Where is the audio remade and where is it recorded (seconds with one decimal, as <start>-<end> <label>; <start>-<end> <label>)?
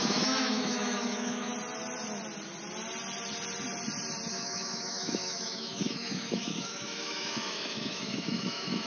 0.0-1.5 remade; 1.5-4.3 recorded; 4.3-8.9 remade